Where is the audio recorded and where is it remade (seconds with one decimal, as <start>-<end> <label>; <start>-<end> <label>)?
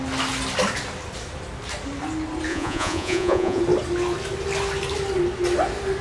0.0-2.5 recorded; 2.5-3.6 remade; 3.6-6.0 recorded